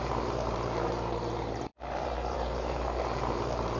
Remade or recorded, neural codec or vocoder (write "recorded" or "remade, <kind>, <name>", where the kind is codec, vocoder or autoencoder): remade, vocoder, BigVGAN v2